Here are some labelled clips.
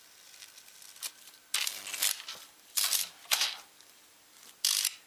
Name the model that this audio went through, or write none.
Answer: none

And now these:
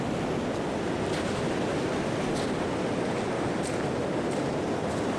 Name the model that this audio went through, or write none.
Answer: none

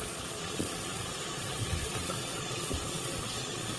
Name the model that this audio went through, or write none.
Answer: vocoder, Vocos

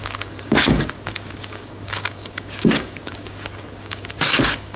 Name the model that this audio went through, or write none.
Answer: codec, DAC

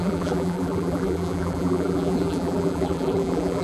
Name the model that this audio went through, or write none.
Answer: vocoder, BigVGAN v2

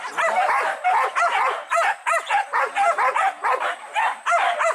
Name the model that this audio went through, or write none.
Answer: vocoder, BigVGAN v2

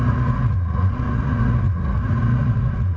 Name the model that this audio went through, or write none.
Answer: vocoder, Vocos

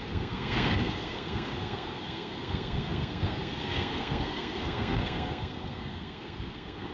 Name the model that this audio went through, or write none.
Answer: codec, SNAC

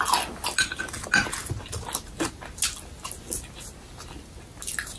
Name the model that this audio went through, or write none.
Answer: none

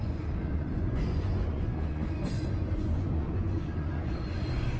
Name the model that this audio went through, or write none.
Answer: vocoder, Vocos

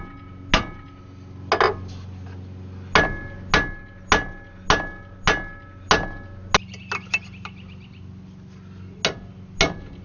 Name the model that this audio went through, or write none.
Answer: none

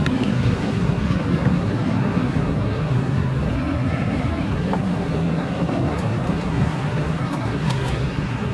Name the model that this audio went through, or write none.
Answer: codec, SNAC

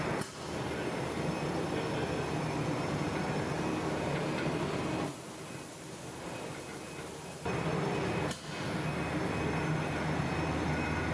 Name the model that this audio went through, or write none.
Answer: none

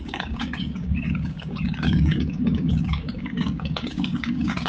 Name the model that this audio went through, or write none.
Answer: codec, DAC